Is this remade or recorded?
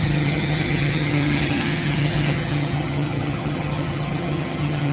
remade